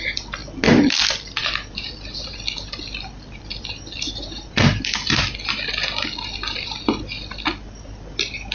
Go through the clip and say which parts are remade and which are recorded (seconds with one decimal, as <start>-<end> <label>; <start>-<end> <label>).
0.0-8.5 recorded